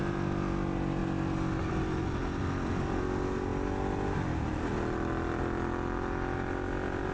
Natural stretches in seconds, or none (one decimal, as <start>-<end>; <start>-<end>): 0.0-7.1